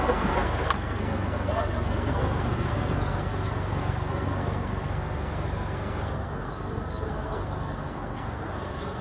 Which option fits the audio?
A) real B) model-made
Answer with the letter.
B